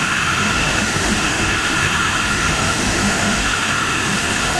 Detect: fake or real fake